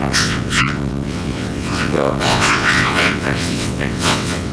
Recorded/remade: remade